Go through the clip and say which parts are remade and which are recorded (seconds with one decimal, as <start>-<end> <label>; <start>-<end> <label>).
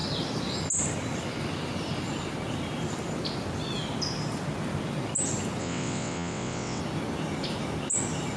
0.0-5.6 recorded; 5.6-6.8 remade; 6.8-8.4 recorded